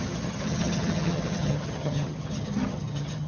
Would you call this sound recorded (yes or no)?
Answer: no